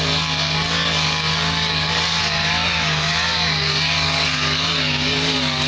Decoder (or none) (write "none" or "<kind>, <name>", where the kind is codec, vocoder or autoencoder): codec, DAC